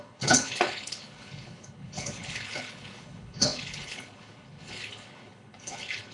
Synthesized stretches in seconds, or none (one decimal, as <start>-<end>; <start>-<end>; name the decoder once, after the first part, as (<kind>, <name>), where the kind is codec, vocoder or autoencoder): 0.0-6.1 (codec, HILCodec)